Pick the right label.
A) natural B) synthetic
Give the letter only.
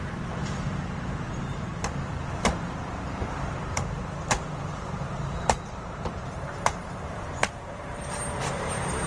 B